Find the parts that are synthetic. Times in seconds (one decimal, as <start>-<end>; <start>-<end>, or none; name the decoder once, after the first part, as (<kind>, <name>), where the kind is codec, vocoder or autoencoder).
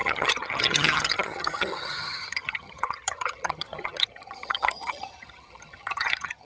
0.0-6.4 (vocoder, HiFi-GAN)